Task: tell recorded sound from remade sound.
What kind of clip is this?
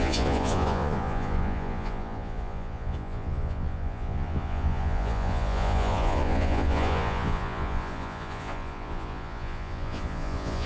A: remade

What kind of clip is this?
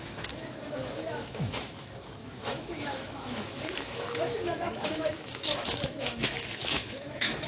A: remade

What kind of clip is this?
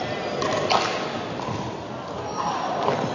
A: recorded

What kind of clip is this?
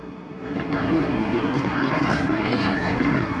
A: remade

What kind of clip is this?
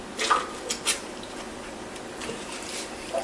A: recorded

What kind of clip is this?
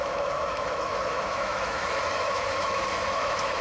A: remade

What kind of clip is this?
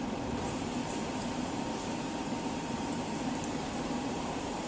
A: remade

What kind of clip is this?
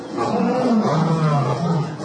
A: remade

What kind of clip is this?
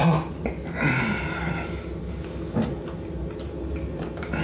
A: recorded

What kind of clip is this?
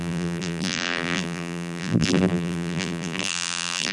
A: remade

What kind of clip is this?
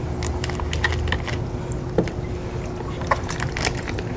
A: recorded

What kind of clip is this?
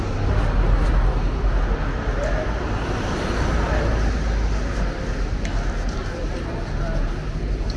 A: recorded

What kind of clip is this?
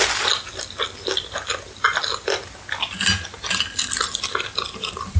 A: recorded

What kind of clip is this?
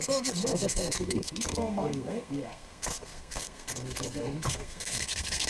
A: remade